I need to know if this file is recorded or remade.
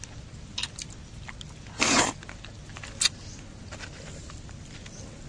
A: recorded